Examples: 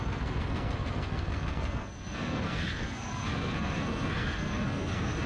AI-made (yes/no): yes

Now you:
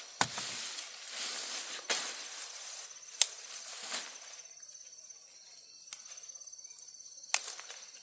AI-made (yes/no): no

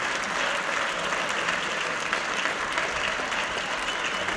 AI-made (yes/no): no